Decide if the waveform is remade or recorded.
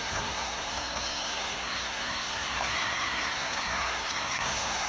remade